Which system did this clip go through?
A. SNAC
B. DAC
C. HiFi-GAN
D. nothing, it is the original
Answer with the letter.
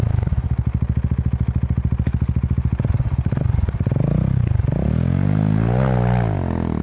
D